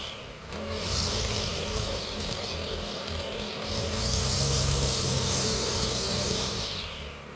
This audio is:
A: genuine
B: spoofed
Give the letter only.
B